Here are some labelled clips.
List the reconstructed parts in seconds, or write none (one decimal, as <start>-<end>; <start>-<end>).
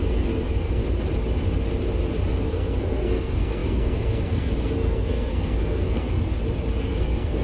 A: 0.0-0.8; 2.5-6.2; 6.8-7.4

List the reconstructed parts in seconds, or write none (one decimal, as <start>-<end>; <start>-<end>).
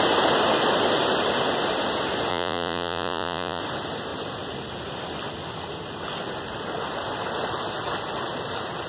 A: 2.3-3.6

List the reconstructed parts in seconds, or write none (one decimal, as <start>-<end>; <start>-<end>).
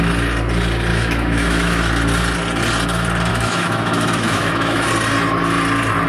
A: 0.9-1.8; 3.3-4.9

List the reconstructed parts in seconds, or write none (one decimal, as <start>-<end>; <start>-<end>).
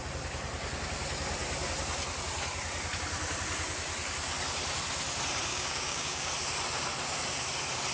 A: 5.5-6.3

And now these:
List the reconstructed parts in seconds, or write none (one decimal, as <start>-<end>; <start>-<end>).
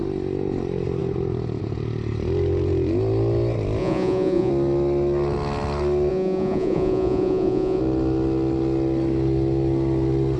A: 3.8-4.5; 6.1-7.8